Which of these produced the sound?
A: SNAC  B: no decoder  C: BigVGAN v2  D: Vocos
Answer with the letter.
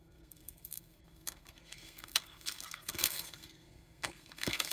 A